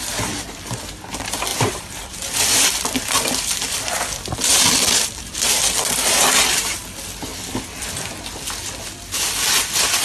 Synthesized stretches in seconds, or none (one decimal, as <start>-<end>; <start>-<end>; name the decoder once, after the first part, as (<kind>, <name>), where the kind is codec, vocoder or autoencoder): 1.5-2.8 (vocoder, BigVGAN v2); 4.5-5.3